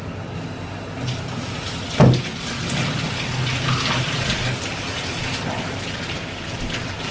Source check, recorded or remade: recorded